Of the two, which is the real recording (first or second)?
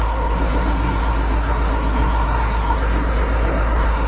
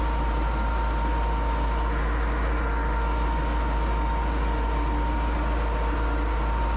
second